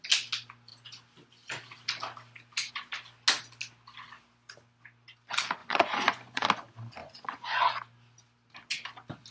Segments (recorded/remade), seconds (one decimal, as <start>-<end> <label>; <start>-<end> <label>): 0.0-5.6 recorded; 5.6-6.5 remade; 6.5-7.0 recorded; 7.0-7.7 remade; 7.7-9.3 recorded